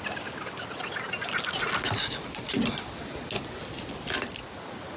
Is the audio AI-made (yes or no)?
no